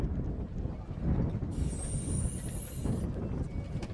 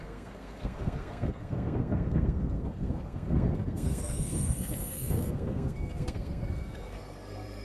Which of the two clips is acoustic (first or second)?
first